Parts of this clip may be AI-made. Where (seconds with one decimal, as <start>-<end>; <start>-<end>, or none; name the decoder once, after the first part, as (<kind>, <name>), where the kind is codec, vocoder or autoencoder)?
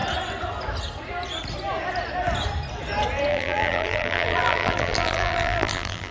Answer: 3.3-6.1 (vocoder, BigVGAN v2)